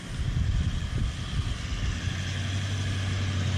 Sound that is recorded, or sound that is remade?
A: recorded